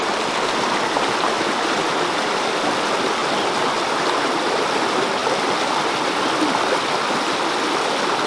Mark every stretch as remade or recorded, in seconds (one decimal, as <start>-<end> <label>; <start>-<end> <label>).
0.0-8.3 recorded